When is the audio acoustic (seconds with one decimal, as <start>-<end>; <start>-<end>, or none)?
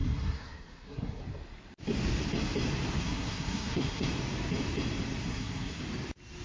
1.2-3.0; 4.1-5.2; 5.8-6.4